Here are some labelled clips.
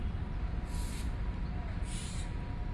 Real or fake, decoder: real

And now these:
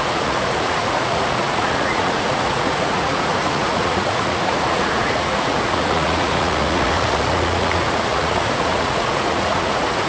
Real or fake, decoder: fake, vocoder, Vocos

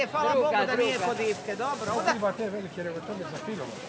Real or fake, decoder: real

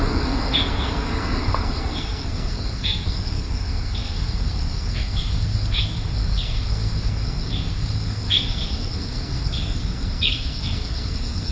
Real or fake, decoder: fake, codec, SNAC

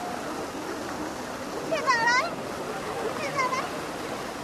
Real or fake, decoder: real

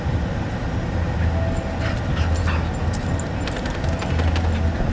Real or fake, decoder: real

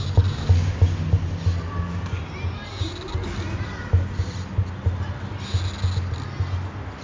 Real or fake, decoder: real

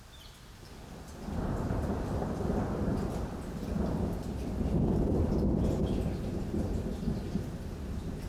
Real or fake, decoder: real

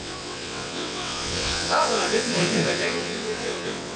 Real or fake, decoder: fake, vocoder, WaveNeXt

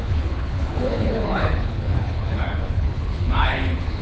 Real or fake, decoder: fake, codec, HILCodec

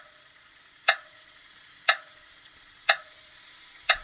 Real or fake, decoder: fake, vocoder, Vocos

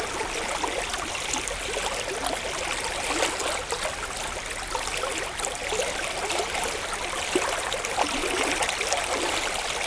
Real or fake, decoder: real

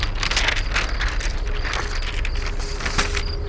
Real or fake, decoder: real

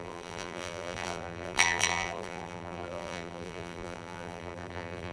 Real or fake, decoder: fake, vocoder, BigVGAN v2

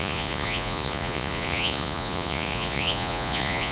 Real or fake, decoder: fake, vocoder, Vocos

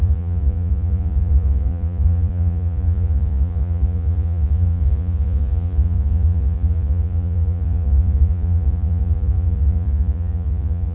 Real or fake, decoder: fake, vocoder, Vocos